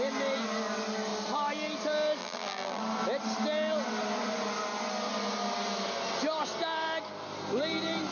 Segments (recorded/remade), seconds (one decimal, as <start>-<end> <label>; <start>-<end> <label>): 0.0-2.2 recorded; 2.2-2.8 remade; 2.8-8.1 recorded